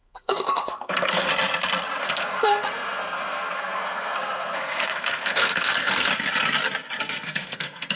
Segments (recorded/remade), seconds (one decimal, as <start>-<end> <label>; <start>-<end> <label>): 0.0-1.3 remade; 1.3-2.0 recorded; 2.0-6.1 remade; 6.1-7.0 recorded; 7.0-8.0 remade